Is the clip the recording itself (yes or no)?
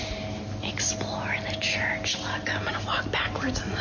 yes